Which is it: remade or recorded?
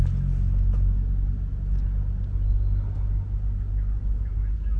recorded